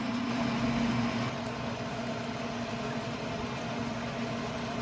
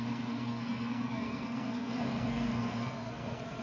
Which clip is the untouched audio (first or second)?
first